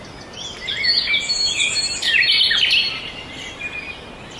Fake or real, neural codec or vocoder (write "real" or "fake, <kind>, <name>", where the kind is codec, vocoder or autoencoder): real